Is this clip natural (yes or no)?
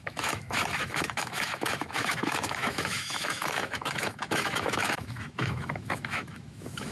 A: no